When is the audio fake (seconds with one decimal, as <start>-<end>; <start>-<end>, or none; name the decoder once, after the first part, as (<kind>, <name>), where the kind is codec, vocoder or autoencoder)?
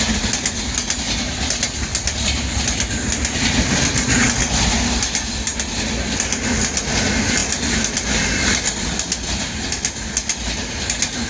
none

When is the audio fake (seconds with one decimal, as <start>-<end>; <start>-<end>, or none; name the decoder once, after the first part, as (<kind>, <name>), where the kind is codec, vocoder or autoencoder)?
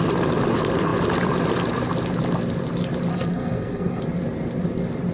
3.1-4.0 (codec, SNAC)